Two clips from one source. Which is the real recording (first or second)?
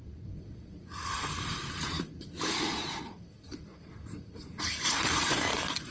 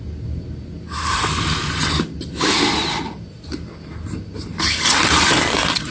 second